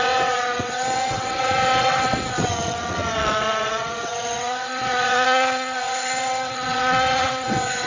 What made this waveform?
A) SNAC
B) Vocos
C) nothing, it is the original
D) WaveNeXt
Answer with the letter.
D